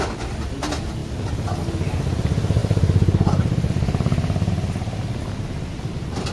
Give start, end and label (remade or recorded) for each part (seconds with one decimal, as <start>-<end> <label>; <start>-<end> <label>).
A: 0.0-6.3 recorded